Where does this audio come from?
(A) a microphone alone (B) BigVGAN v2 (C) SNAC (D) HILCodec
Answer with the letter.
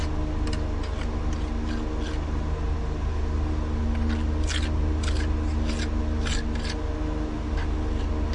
A